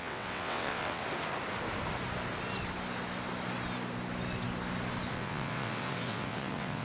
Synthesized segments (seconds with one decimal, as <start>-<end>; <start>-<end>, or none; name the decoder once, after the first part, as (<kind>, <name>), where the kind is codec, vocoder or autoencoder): 0.0-1.0 (vocoder, WaveNeXt); 5.1-6.8